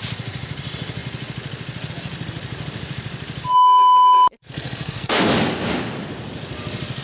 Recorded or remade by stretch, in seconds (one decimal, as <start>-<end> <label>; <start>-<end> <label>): 0.0-4.4 recorded; 4.4-5.3 remade; 5.3-7.0 recorded